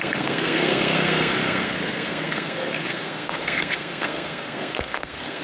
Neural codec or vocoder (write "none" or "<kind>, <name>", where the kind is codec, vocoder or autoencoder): codec, SNAC